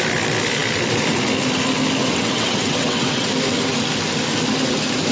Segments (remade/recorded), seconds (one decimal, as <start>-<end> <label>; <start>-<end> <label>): 0.0-2.0 recorded; 2.0-3.3 remade; 3.3-5.1 recorded